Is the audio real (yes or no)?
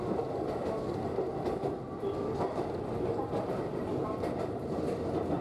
yes